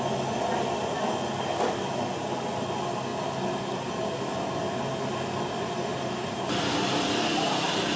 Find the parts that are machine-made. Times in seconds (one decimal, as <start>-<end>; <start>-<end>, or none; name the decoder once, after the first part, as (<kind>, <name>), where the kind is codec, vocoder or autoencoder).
none